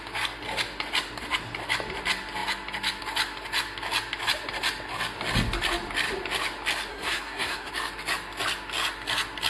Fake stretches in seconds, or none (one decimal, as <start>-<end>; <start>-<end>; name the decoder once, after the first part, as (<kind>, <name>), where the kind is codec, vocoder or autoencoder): 6.9-7.7 (codec, SNAC)